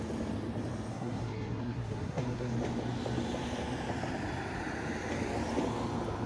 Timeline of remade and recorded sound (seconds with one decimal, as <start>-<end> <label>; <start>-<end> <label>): 0.0-0.9 recorded; 0.9-2.5 remade; 2.5-6.3 recorded